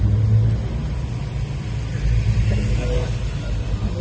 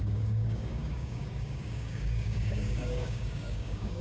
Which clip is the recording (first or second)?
first